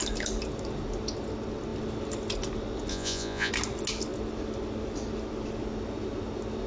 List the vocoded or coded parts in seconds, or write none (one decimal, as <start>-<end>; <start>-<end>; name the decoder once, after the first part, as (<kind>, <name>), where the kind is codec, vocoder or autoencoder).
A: 2.9-3.5 (vocoder, Vocos)